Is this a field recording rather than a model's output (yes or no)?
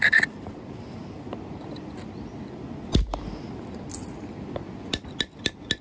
yes